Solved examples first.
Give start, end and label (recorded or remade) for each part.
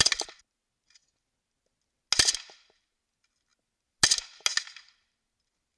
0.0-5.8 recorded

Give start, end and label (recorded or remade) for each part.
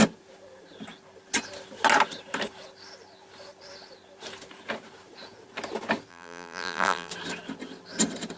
0.0-6.1 recorded; 6.1-7.1 remade; 7.1-8.4 recorded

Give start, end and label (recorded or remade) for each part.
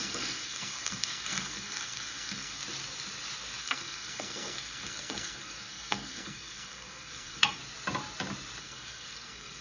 0.0-2.6 remade; 2.6-3.6 recorded; 3.6-7.6 remade; 7.6-8.6 recorded; 8.6-9.6 remade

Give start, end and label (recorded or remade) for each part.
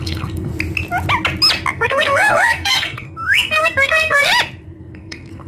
0.0-0.5 remade; 0.5-1.7 recorded; 1.7-4.3 remade; 4.3-4.8 recorded; 4.8-5.5 remade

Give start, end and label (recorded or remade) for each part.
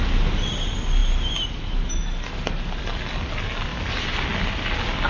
0.0-5.1 recorded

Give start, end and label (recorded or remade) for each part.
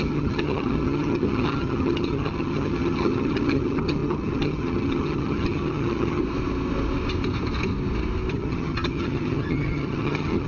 0.0-6.2 remade; 6.2-8.3 recorded; 8.3-10.5 remade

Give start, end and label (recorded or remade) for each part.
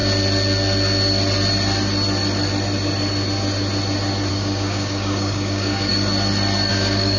0.0-4.3 recorded; 4.3-5.9 remade; 5.9-6.7 recorded; 6.7-7.2 remade